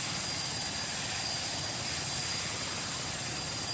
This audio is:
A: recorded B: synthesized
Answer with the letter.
A